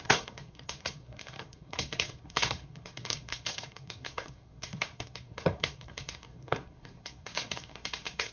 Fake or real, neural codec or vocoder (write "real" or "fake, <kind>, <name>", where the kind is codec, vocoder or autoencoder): fake, codec, SNAC